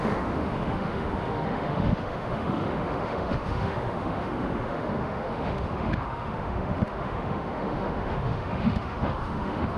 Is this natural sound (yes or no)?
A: no